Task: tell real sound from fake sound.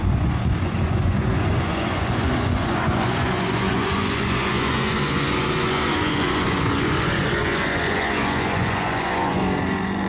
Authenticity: fake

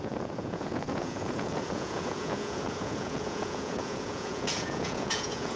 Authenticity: fake